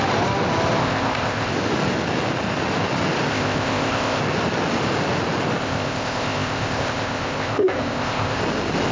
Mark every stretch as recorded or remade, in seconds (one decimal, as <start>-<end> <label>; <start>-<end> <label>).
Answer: 0.0-0.8 recorded; 0.8-1.5 remade; 1.5-3.3 recorded; 3.3-4.2 remade; 4.2-5.6 recorded; 5.6-8.4 remade; 8.4-8.9 recorded

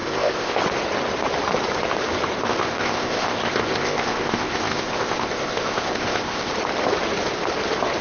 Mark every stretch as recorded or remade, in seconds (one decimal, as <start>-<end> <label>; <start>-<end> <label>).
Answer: 0.0-0.6 remade; 0.6-2.4 recorded; 2.4-6.5 remade; 6.5-8.0 recorded

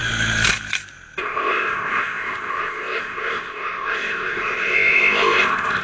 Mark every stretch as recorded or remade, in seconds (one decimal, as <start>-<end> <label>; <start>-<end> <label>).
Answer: 0.0-1.2 recorded; 1.2-5.8 remade

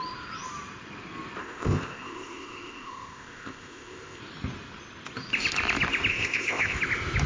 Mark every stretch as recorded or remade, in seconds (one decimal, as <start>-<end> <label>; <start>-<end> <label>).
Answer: 0.0-1.4 recorded; 1.4-4.2 remade; 4.2-6.1 recorded; 6.1-6.8 remade; 6.8-7.3 recorded

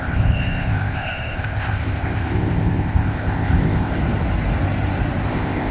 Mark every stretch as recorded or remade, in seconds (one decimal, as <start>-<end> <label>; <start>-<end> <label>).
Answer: 0.0-4.0 remade; 4.0-5.3 recorded; 5.3-5.7 remade

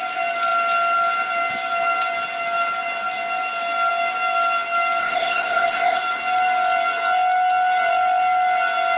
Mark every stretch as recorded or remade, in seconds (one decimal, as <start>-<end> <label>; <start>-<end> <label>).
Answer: 0.0-5.0 recorded; 5.0-6.0 remade; 6.0-9.0 recorded